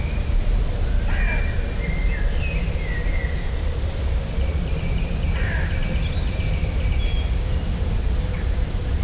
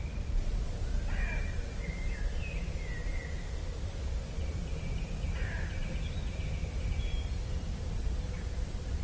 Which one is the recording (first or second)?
first